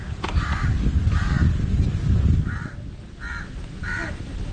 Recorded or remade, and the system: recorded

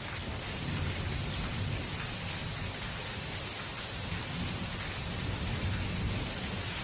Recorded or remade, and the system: recorded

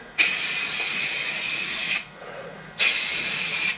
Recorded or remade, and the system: remade, vocoder, Vocos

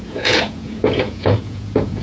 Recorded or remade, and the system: remade, vocoder, Vocos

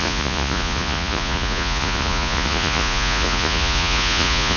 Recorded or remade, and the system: remade, vocoder, Vocos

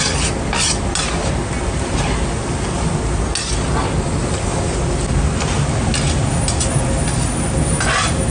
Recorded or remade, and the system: recorded